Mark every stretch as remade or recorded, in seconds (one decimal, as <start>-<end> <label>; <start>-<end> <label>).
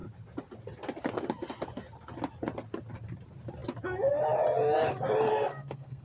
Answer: 0.0-5.3 recorded; 5.3-6.0 remade